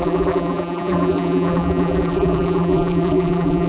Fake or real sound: fake